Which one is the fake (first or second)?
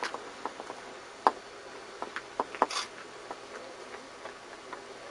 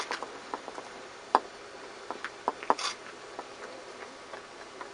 second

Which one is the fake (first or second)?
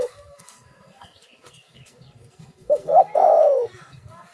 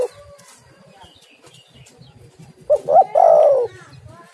first